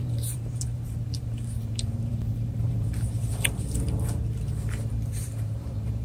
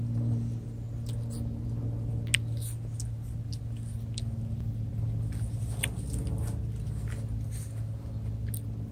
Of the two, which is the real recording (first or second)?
second